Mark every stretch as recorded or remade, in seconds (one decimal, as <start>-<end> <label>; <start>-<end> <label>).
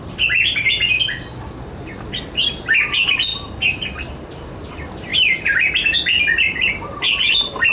0.0-7.7 recorded